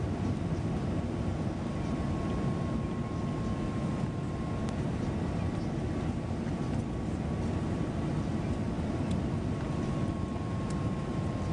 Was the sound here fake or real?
real